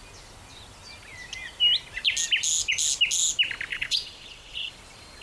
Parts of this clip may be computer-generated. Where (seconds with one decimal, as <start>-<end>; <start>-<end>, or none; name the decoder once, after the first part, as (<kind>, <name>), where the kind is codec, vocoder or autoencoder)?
3.7-4.7 (vocoder, WaveNeXt)